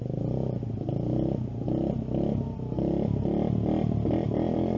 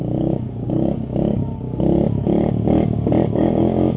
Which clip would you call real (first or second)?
first